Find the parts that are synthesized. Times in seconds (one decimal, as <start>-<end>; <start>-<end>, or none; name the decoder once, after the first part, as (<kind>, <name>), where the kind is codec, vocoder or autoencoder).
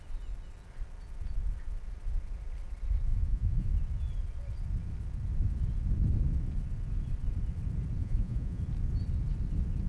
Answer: 3.1-3.7 (vocoder, Vocos); 8.0-8.6